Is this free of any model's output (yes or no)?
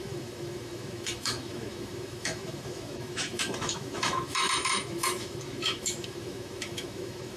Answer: no